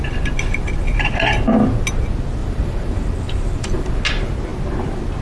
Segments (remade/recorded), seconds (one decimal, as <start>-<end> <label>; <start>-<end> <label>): 0.0-2.4 recorded; 2.4-3.9 remade; 3.9-5.2 recorded